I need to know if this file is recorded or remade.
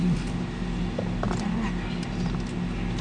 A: recorded